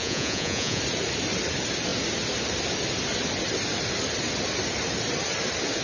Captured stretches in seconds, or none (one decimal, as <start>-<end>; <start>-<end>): 0.8-5.8

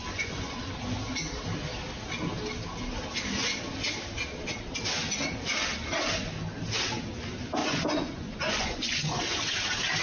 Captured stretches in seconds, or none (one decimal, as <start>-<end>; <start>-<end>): 0.6-7.6; 9.2-10.0

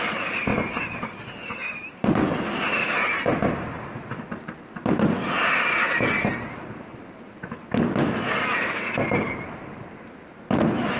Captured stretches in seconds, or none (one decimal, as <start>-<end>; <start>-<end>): 0.0-11.0

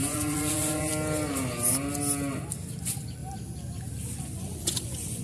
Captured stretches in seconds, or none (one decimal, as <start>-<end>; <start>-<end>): 0.9-2.8; 3.2-4.2